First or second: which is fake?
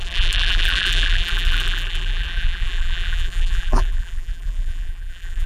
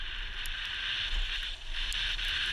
first